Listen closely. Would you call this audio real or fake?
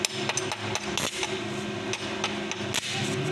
real